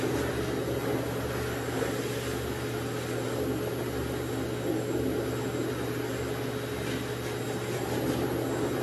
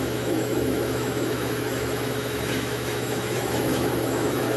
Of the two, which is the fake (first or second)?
second